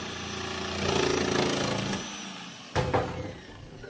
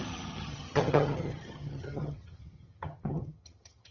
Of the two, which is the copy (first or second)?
second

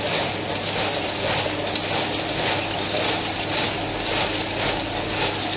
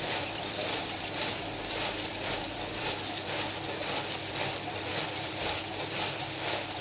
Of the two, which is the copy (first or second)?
second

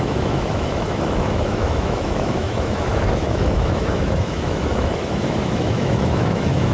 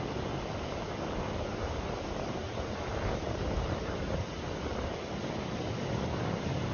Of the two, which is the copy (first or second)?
first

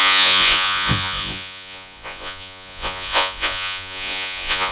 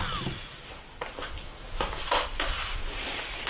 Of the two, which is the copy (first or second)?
first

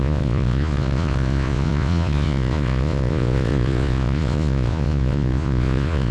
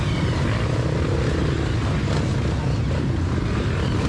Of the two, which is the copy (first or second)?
first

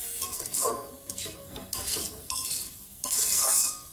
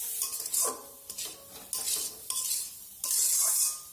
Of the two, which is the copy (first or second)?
first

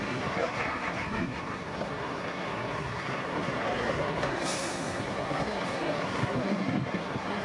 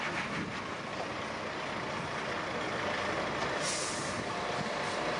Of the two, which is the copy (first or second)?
first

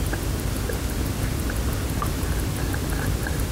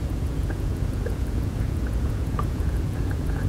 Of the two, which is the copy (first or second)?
second